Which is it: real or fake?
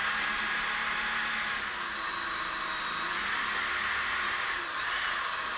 real